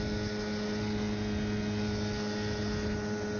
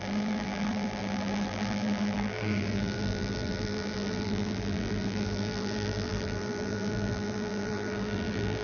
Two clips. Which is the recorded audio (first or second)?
first